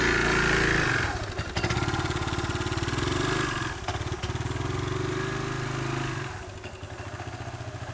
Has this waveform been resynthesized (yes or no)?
no